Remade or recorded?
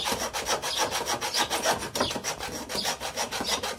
recorded